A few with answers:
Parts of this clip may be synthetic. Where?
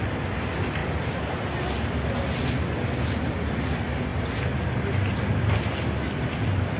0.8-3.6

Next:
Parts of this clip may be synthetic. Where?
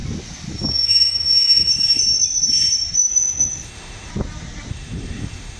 0.7-1.7; 3.1-4.1; 4.7-5.6